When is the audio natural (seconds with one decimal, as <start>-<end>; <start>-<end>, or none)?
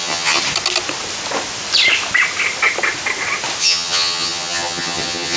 0.4-3.6